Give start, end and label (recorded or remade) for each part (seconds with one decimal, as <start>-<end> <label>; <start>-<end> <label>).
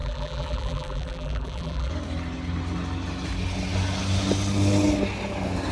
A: 0.0-1.9 remade; 1.9-5.7 recorded